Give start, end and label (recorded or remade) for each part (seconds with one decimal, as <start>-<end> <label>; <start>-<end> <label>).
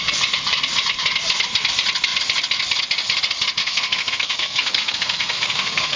0.0-3.6 recorded; 3.6-6.0 remade